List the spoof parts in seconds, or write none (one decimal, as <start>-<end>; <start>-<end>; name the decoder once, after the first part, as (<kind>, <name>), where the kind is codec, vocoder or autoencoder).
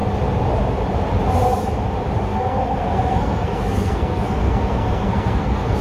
2.3-5.8 (codec, SNAC)